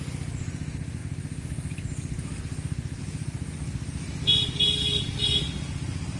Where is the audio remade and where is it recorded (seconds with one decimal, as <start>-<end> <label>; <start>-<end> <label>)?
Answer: 0.0-6.2 recorded